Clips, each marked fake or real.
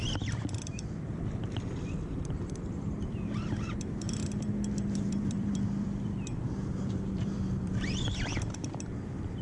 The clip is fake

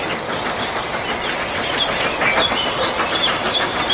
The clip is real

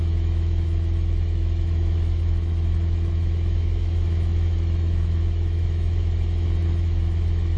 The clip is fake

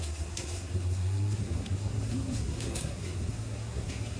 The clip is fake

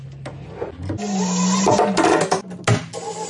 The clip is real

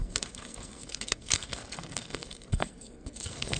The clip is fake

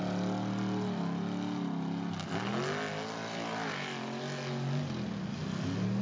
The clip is real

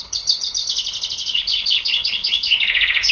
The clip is fake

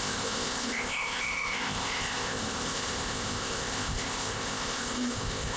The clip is fake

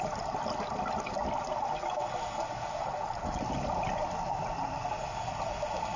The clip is real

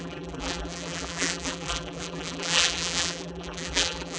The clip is fake